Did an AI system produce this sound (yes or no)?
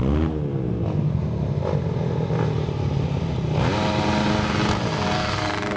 no